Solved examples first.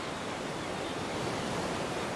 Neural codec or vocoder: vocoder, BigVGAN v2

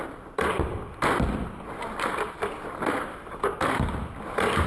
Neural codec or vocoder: vocoder, BigVGAN v2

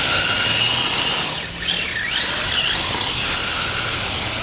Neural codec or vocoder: none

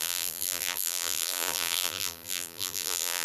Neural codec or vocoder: vocoder, BigVGAN v2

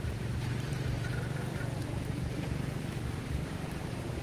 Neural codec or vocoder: vocoder, BigVGAN v2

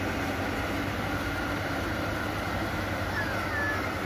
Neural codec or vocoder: none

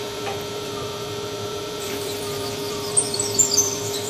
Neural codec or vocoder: vocoder, BigVGAN v2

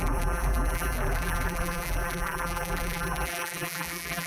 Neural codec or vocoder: vocoder, BigVGAN v2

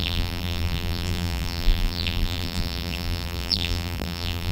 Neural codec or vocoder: vocoder, BigVGAN v2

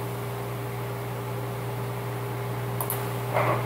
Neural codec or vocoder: none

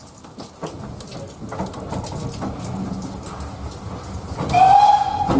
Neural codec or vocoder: none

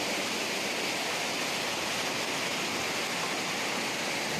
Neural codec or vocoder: none